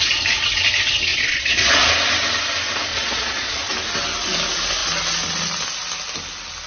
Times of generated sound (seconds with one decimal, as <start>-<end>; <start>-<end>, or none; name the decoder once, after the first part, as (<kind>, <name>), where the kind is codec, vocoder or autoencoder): 1.1-1.9 (vocoder, Vocos); 2.9-3.7